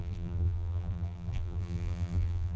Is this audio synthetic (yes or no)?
yes